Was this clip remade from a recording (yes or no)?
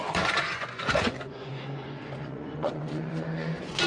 yes